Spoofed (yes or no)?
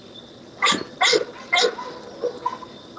no